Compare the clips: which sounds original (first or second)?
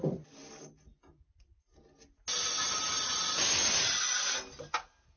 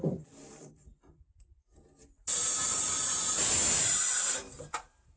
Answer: first